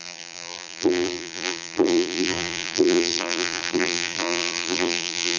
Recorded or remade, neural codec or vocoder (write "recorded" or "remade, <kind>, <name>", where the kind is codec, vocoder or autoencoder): remade, vocoder, BigVGAN v2